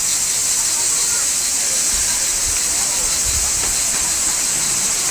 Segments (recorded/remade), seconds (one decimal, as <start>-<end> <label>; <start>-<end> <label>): 0.0-5.1 recorded